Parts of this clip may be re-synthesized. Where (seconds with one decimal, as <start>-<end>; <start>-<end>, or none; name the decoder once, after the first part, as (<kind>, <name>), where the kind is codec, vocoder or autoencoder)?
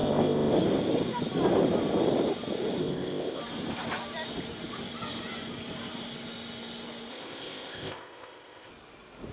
0.0-0.5 (codec, ZipCodec); 2.8-3.4; 7.1-8.7